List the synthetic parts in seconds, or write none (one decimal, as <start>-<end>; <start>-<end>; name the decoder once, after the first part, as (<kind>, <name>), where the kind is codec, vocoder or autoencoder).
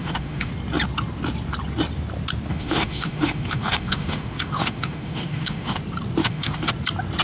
0.0-0.5 (autoencoder, DAC-VAE); 2.5-5.8; 6.2-6.7